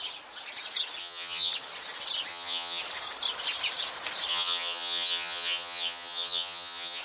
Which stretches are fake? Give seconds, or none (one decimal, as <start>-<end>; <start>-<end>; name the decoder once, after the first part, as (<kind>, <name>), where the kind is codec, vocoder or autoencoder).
1.0-1.5 (vocoder, HiFi-GAN); 2.3-2.8; 4.3-7.0